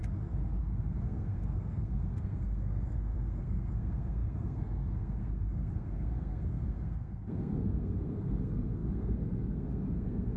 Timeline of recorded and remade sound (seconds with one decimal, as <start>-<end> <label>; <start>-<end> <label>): 0.0-0.6 recorded; 0.6-10.4 remade